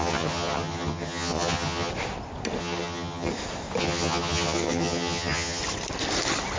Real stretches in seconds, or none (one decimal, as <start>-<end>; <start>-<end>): 1.9-2.6; 3.3-3.8; 5.6-6.6